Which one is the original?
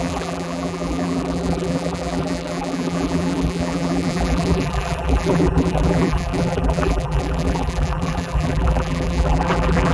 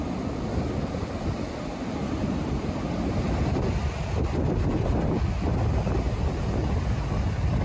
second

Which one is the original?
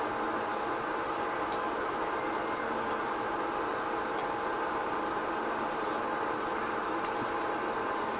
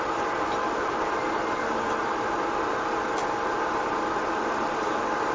first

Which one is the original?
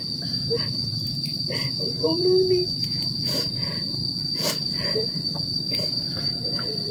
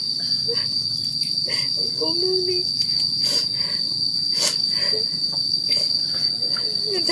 second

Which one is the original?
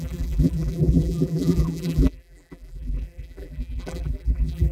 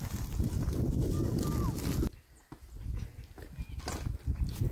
second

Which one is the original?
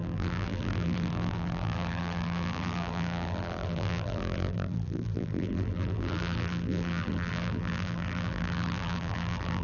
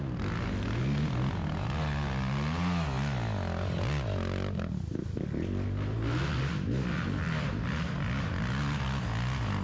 second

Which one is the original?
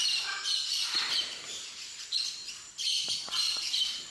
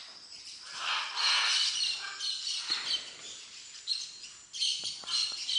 second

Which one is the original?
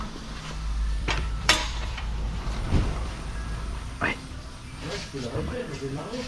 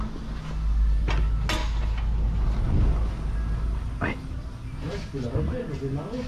second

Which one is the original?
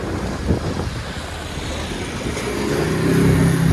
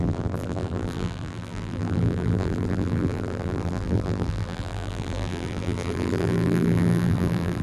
first